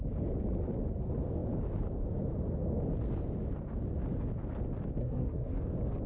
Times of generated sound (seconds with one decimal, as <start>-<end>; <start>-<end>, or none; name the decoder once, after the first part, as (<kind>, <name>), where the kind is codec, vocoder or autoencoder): 5.0-5.6 (codec, SNAC)